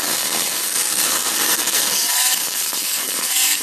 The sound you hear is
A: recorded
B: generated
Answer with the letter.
B